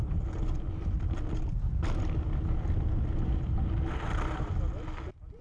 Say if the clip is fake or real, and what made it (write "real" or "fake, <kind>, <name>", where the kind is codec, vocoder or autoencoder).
real